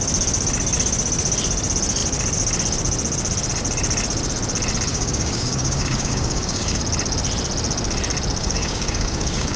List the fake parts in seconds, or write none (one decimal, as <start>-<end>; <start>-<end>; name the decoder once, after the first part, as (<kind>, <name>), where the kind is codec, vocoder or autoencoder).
4.9-6.8 (codec, DAC); 8.4-9.6